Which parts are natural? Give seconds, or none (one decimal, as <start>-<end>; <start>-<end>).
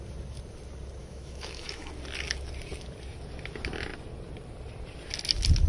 0.0-1.0; 1.9-5.7